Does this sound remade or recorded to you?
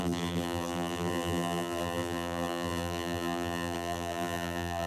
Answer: remade